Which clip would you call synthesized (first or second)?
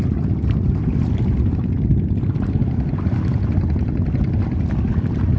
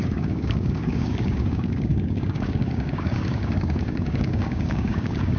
second